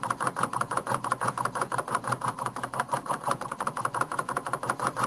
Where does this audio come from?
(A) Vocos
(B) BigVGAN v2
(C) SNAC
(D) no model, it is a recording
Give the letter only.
A